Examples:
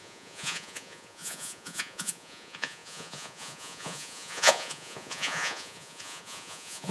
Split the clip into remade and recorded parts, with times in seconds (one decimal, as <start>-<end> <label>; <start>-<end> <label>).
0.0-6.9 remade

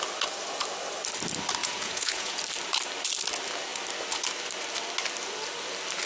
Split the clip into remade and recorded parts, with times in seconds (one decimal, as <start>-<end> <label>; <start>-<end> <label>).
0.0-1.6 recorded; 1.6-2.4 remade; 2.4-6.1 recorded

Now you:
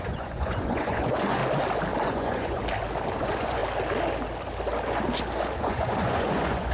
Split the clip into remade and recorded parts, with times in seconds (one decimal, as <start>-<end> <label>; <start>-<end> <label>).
0.0-1.4 remade; 1.4-2.0 recorded; 2.0-2.6 remade; 2.6-3.2 recorded; 3.2-3.6 remade; 3.6-5.6 recorded; 5.6-6.7 remade

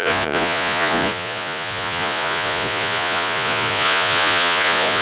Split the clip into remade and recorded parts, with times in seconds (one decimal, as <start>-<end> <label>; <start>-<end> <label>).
0.0-5.0 remade